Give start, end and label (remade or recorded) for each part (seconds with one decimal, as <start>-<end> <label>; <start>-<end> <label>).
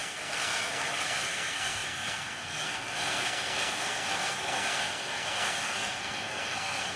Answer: 0.0-7.0 remade